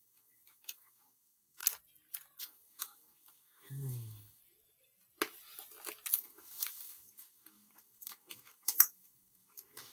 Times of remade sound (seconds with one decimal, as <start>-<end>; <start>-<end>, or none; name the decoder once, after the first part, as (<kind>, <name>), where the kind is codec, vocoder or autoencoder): 0.0-1.6 (codec, DAC); 2.4-4.4; 6.1-9.9